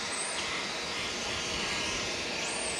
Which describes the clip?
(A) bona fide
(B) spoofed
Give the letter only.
A